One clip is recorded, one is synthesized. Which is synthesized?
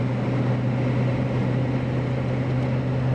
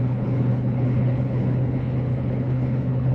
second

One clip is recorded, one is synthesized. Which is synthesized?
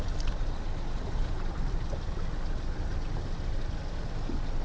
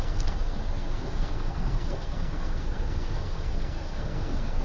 second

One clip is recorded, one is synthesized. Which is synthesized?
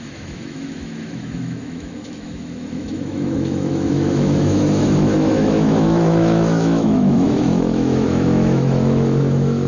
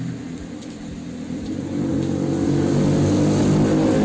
first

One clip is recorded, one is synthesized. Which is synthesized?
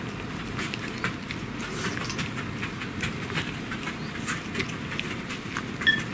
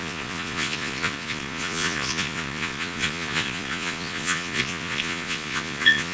second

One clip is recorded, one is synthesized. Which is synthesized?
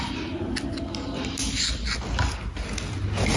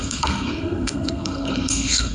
second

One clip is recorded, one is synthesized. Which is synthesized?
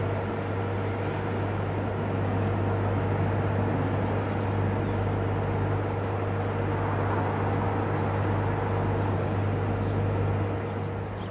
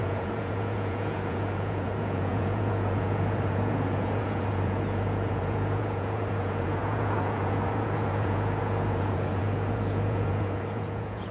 second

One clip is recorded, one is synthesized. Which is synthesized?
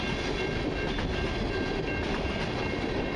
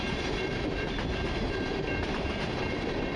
second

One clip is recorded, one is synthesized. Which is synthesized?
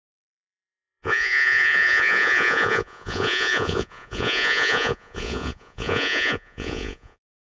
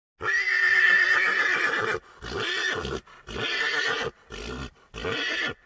first